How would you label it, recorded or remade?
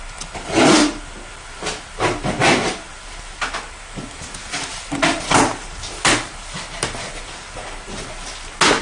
recorded